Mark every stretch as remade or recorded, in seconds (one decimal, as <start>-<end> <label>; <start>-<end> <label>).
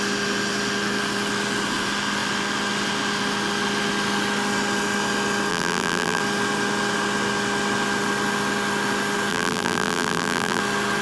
0.0-5.5 recorded; 5.5-6.2 remade; 6.2-9.3 recorded; 9.3-10.6 remade; 10.6-11.0 recorded